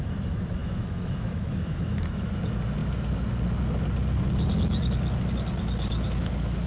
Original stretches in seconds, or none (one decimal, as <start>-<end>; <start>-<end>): 0.0-0.6; 2.3-6.7